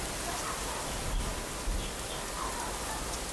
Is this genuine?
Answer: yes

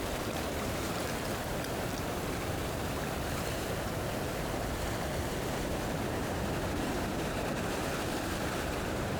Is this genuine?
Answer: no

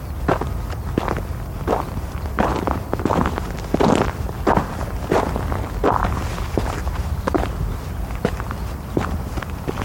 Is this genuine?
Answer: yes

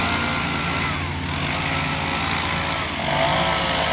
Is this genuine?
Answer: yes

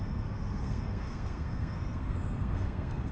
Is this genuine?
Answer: no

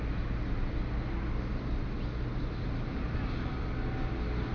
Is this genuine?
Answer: yes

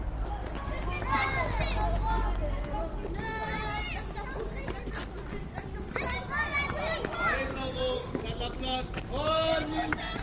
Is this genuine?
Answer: yes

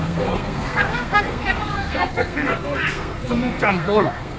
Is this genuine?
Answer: no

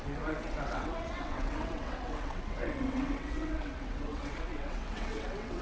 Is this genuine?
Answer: no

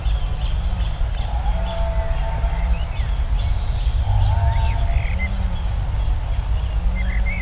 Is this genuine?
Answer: yes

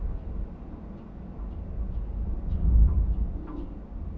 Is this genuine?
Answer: yes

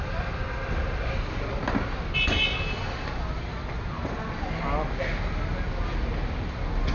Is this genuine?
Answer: yes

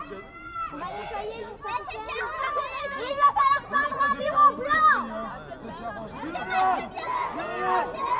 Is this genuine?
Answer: yes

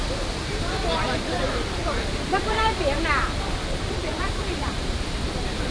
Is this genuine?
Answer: no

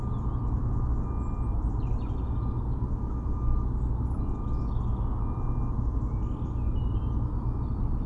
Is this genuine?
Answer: yes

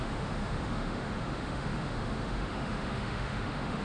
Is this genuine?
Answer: no